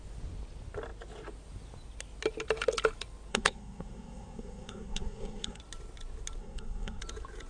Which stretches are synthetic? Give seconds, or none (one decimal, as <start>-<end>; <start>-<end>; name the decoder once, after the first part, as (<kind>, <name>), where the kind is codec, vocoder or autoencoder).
3.3-5.6 (codec, SNAC); 6.4-7.0